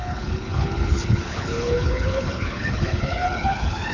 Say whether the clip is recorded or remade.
remade